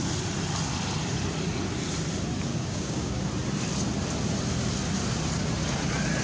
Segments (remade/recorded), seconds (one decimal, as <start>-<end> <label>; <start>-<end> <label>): 0.0-2.5 recorded; 2.5-3.2 remade; 3.2-6.2 recorded